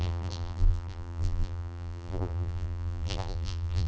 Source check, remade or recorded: remade